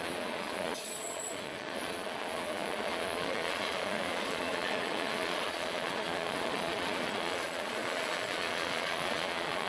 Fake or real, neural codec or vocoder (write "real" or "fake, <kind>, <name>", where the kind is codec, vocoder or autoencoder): fake, vocoder, Vocos